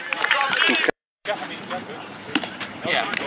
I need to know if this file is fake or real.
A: fake